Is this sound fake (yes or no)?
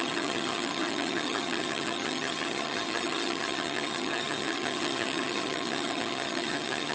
yes